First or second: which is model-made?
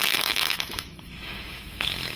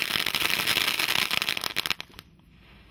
first